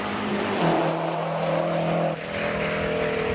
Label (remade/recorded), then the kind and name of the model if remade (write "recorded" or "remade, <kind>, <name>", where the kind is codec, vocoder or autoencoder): remade, vocoder, BigVGAN v2